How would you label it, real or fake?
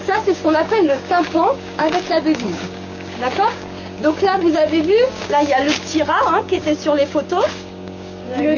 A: fake